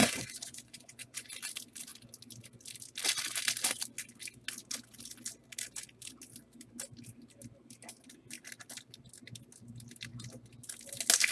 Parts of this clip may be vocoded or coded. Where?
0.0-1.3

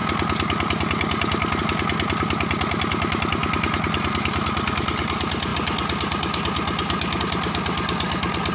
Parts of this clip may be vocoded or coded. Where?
none

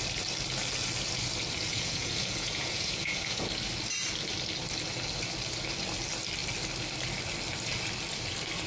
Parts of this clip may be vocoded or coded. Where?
1.7-3.4

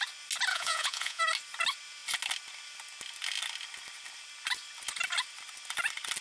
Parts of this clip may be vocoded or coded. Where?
0.5-1.2

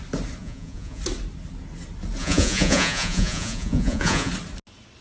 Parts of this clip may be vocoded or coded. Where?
0.4-1.0; 2.2-4.3

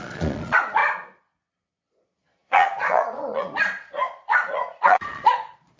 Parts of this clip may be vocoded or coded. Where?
0.0-5.8

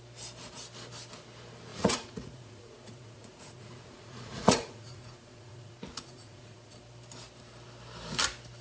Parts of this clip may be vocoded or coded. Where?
1.7-6.8

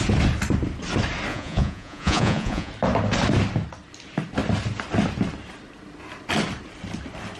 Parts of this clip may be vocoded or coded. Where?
1.3-2.7